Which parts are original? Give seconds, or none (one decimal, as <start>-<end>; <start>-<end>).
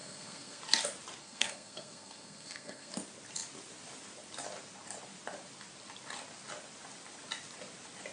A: 0.6-1.2; 2.9-8.1